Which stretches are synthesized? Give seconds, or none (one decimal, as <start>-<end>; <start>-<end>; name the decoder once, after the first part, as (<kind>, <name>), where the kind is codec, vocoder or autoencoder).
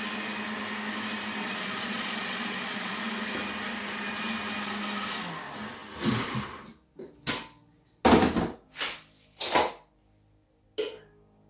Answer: 1.4-3.0 (vocoder, Vocos)